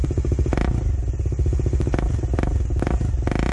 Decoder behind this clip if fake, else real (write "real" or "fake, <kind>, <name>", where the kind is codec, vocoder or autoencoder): real